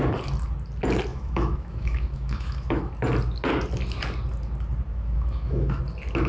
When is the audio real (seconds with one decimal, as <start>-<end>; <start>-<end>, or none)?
0.0-1.1; 2.9-4.9; 5.8-6.3